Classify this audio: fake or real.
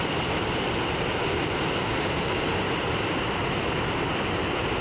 real